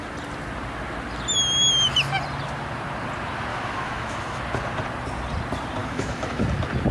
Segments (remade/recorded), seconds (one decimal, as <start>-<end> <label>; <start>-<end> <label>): 0.0-3.5 recorded; 3.5-4.4 remade; 4.4-5.8 recorded; 5.8-6.4 remade; 6.4-6.9 recorded